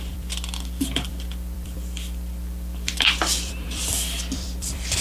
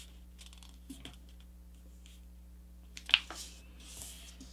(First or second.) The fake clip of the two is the first